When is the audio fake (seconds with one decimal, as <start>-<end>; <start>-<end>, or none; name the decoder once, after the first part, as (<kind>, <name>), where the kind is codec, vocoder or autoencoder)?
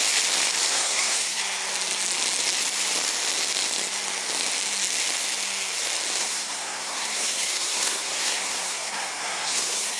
0.7-1.4 (codec, SNAC); 6.2-10.0